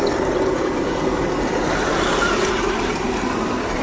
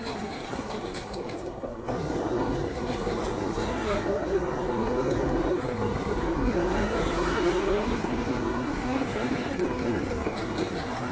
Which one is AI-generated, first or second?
second